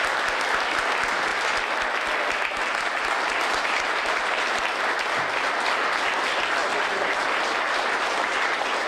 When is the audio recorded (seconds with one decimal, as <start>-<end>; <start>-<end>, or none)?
0.0-8.9

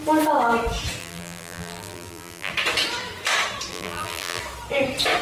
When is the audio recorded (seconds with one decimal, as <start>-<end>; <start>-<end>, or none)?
0.0-1.0; 2.5-3.7; 4.4-5.2

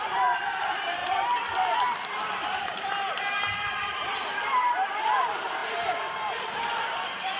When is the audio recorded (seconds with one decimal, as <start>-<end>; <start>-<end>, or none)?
none